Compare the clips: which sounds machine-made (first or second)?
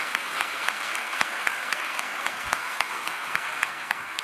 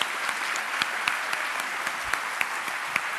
first